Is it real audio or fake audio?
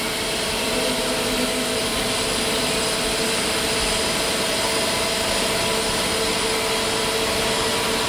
real